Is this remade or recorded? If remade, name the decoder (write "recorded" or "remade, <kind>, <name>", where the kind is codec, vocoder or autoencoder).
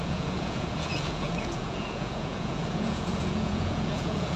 remade, vocoder, Vocos